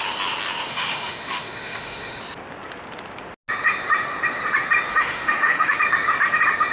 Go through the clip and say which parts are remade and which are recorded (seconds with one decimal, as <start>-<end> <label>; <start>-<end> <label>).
0.0-0.7 recorded; 0.7-2.2 remade; 2.2-4.9 recorded; 4.9-5.8 remade; 5.8-6.7 recorded